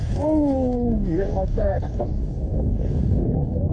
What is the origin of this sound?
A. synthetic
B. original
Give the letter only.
A